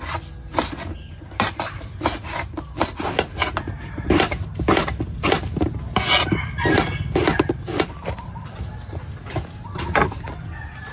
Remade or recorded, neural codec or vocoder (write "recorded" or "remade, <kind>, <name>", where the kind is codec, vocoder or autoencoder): recorded